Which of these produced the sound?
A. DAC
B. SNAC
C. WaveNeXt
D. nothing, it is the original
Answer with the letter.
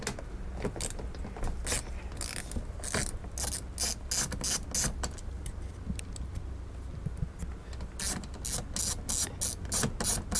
D